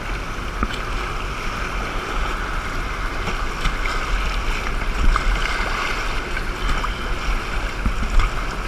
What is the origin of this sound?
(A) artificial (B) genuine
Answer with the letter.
B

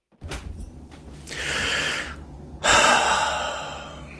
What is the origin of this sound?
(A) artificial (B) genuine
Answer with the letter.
B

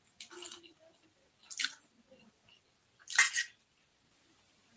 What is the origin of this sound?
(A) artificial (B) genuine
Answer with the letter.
B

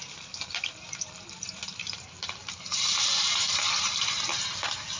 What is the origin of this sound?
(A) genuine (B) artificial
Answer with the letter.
B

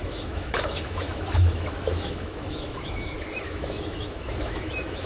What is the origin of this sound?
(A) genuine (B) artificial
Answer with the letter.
B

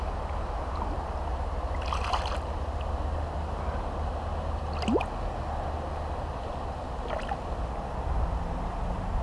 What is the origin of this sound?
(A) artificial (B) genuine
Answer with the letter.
B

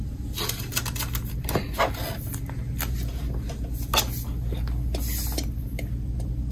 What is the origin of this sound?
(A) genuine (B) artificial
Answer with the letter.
A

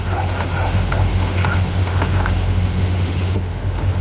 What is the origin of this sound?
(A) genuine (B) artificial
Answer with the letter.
B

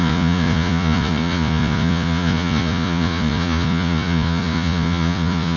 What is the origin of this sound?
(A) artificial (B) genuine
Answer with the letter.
A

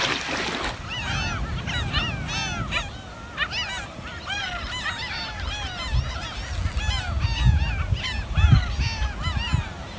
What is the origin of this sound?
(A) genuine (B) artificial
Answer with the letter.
A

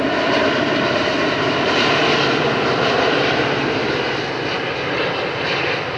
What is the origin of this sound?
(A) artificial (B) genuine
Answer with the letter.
A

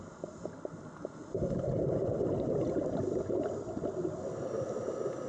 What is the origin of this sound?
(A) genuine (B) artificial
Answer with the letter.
A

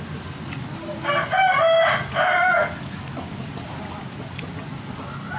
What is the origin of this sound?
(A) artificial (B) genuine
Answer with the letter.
B